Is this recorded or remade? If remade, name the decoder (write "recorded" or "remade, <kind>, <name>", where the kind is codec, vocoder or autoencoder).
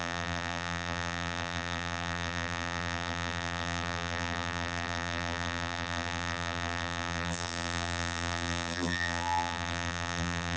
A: remade, vocoder, BigVGAN v2